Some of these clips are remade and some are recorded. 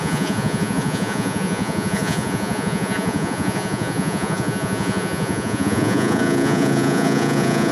remade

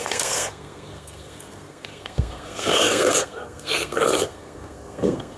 remade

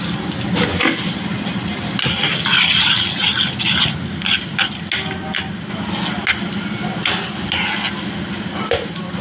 recorded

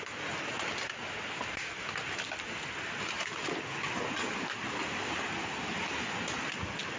recorded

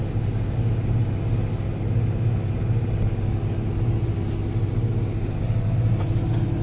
recorded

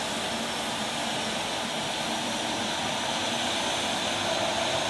recorded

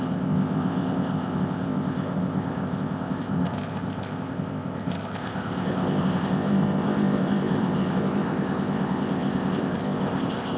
remade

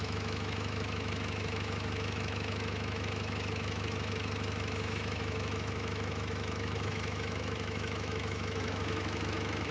remade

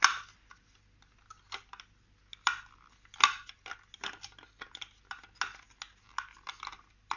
recorded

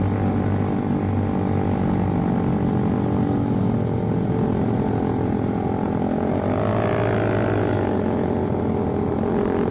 recorded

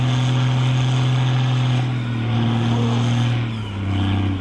recorded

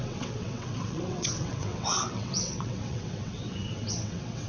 remade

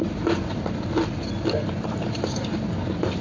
remade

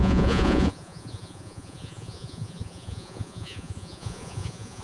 remade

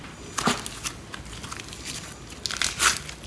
recorded